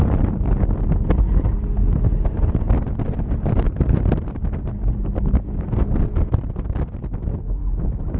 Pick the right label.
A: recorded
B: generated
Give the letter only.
A